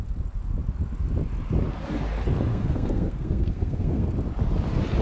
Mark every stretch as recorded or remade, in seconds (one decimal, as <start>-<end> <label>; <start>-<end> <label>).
0.0-2.5 recorded; 2.5-4.1 remade; 4.1-5.0 recorded